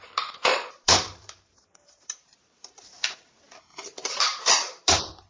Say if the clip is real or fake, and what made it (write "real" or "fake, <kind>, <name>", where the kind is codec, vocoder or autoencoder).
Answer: fake, vocoder, BigVGAN v2